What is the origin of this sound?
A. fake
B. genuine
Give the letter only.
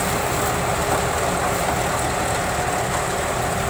B